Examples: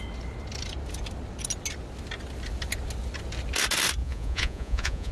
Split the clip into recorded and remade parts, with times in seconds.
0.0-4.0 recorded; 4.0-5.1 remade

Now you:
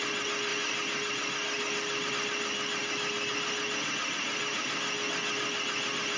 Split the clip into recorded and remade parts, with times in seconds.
0.0-6.2 recorded

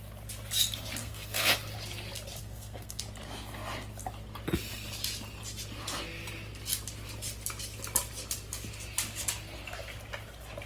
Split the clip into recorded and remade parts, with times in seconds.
0.0-1.0 recorded; 1.0-1.5 remade; 1.5-2.4 recorded; 2.4-3.0 remade; 3.0-10.7 recorded

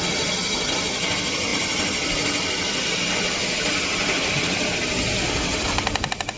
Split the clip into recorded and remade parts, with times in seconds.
0.0-6.4 recorded